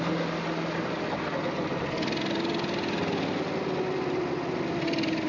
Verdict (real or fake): real